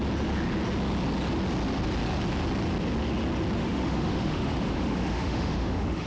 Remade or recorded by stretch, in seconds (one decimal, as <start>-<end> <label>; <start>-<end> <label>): 0.0-3.6 recorded; 3.6-6.1 remade